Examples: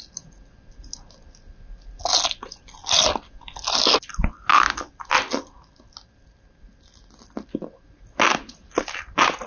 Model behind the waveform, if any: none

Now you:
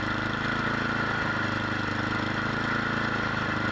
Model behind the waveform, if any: none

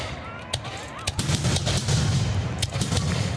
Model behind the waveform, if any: none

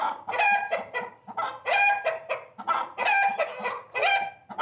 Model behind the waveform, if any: none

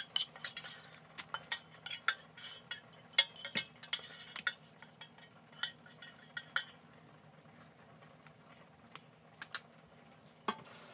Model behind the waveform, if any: none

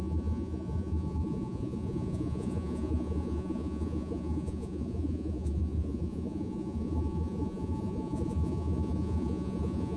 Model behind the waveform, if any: vocoder, Vocos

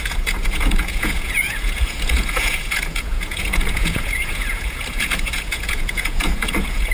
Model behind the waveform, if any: vocoder, Vocos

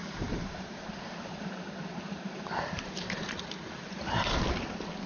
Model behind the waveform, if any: vocoder, BigVGAN v2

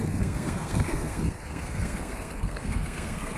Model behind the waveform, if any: codec, SNAC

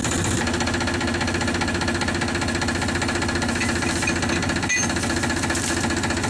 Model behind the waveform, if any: none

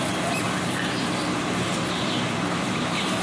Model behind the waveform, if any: vocoder, BigVGAN v2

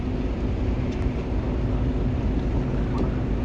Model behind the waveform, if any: none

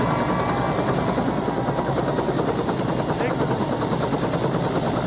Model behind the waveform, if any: none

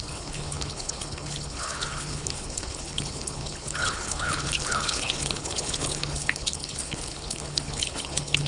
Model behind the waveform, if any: codec, HILCodec